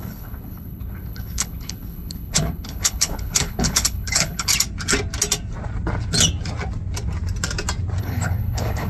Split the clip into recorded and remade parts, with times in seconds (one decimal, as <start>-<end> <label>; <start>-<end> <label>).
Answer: 0.0-4.5 remade; 4.5-8.0 recorded; 8.0-8.9 remade